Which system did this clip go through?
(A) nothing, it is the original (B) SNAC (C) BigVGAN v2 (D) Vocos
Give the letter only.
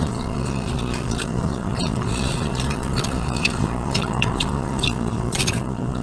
D